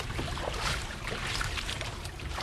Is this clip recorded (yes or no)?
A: no